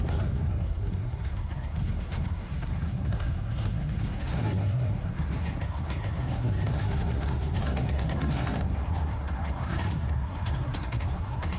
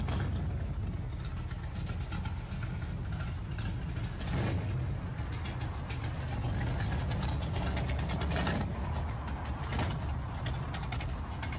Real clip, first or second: second